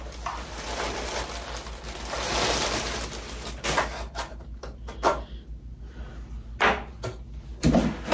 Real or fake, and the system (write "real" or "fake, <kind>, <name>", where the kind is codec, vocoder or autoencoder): real